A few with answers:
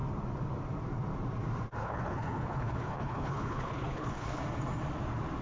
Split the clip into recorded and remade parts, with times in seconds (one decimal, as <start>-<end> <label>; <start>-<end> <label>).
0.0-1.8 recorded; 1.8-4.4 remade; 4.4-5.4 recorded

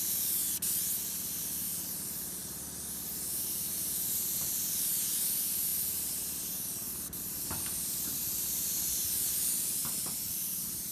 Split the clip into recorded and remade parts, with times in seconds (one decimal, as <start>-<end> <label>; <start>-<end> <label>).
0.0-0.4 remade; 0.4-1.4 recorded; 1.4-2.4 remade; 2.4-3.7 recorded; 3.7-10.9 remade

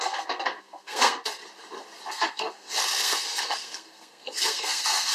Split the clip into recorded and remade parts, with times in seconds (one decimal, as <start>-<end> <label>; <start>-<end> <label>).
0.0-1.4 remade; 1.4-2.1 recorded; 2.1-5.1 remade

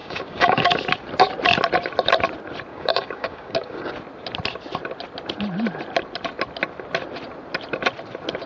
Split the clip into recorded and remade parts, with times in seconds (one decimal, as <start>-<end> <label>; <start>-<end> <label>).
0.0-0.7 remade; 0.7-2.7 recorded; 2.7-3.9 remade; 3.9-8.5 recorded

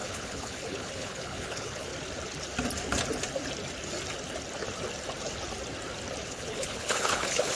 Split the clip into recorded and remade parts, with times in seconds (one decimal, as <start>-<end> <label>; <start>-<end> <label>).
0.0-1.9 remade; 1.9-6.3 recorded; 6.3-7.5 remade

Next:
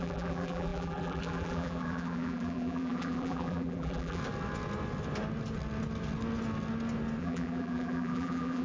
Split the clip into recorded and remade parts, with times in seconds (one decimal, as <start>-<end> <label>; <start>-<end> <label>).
0.0-4.2 remade; 4.2-7.2 recorded; 7.2-8.6 remade

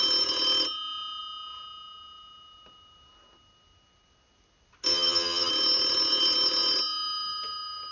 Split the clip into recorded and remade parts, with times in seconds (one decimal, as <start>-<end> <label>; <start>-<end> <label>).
0.0-4.9 recorded; 4.9-5.5 remade; 5.5-7.9 recorded